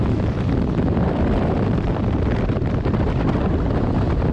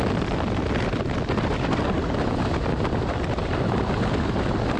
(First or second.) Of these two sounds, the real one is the second